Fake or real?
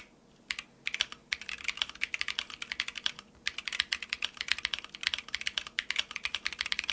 real